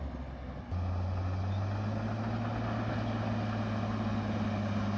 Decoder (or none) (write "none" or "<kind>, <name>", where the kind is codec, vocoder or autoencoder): none